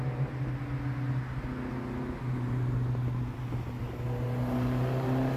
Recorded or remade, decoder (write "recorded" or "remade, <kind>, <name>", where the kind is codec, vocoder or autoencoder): recorded